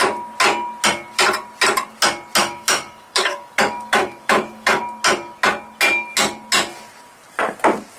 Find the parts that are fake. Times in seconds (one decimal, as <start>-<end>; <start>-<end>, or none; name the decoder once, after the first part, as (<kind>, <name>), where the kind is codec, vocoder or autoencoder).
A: 2.4-4.8 (autoencoder, DAC-VAE)